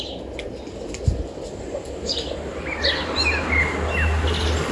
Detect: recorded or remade recorded